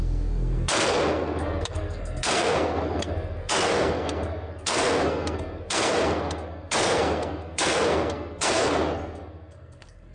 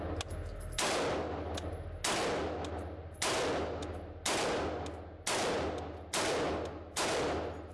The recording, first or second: second